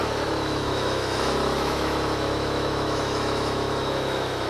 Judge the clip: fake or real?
fake